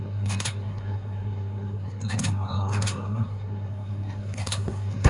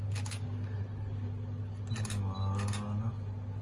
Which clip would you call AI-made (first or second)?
first